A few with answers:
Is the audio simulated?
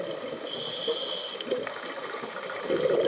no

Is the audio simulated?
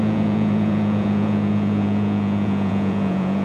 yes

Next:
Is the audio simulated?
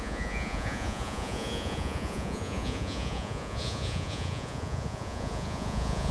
yes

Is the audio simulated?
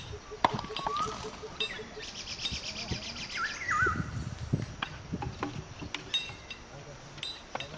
no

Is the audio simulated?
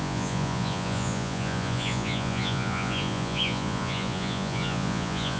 yes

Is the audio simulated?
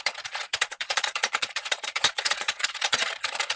yes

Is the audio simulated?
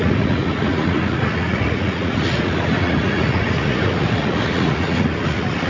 yes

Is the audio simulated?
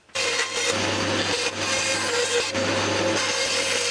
no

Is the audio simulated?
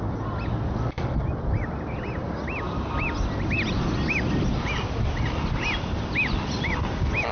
no